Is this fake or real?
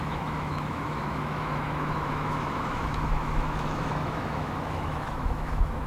fake